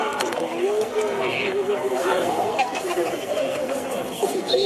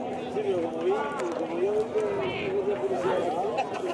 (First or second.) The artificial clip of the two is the first